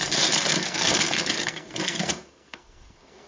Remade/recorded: remade